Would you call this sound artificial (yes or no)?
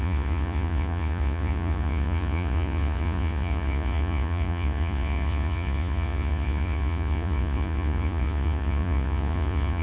yes